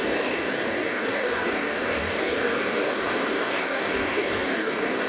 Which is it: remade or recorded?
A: remade